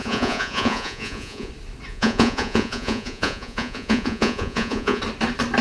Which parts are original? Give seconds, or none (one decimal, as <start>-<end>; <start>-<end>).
1.5-1.9; 5.0-5.6